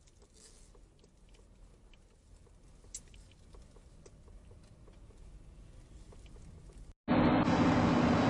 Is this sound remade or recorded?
recorded